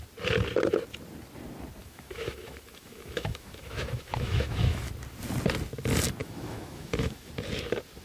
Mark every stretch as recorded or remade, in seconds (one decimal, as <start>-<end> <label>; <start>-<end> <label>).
0.0-1.8 recorded; 1.8-4.9 remade; 4.9-6.2 recorded; 6.2-7.3 remade; 7.3-8.0 recorded